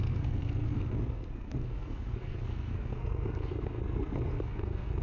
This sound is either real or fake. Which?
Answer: fake